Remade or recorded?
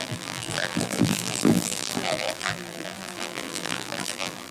remade